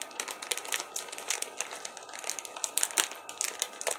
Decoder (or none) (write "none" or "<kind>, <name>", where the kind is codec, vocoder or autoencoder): none